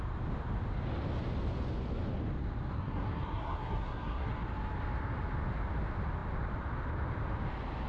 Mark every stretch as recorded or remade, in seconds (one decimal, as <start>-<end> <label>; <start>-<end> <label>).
0.0-2.7 recorded; 2.7-4.3 remade; 4.3-7.9 recorded